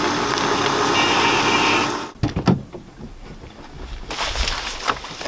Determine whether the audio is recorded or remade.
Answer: recorded